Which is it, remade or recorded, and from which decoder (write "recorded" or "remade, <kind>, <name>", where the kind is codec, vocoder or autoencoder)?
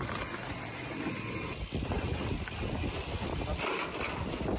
recorded